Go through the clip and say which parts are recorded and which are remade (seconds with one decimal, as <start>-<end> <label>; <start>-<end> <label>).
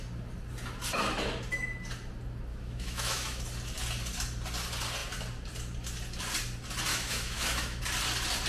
0.0-2.5 recorded; 2.5-3.4 remade; 3.4-6.9 recorded; 6.9-7.8 remade; 7.8-8.5 recorded